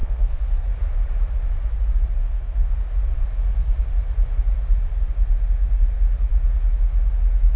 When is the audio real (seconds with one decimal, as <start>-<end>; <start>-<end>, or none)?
0.7-2.2; 2.8-7.6